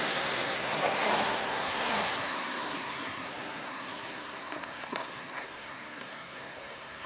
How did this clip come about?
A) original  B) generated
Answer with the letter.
B